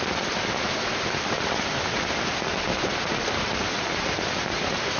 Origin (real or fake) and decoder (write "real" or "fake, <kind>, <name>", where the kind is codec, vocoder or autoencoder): real